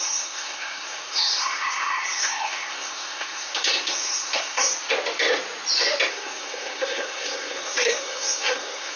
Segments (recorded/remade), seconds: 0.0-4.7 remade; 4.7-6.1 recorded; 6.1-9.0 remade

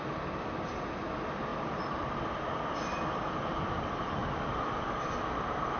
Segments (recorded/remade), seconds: 0.0-1.5 recorded; 1.5-3.6 remade; 3.6-5.8 recorded

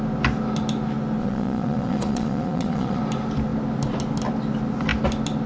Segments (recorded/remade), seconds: 0.0-1.2 recorded; 1.2-3.0 remade; 3.0-5.5 recorded

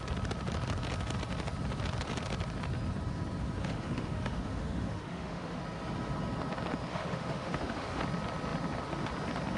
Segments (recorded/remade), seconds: 0.0-3.6 recorded; 3.6-5.6 remade; 5.6-6.9 recorded; 6.9-8.0 remade; 8.0-9.6 recorded

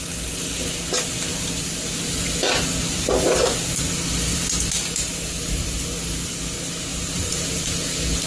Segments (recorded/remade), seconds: 0.0-6.9 recorded; 6.9-7.7 remade; 7.7-8.3 recorded

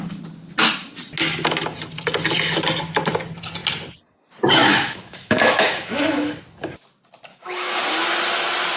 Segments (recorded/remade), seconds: 0.0-4.6 recorded; 4.6-6.3 remade; 6.3-7.3 recorded; 7.3-7.8 remade; 7.8-8.8 recorded

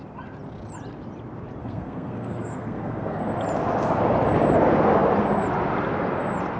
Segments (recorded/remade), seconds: 0.0-1.6 recorded; 1.6-3.2 remade; 3.2-6.6 recorded

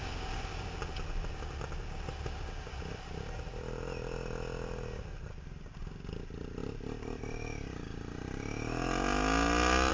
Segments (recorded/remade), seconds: 0.0-9.9 recorded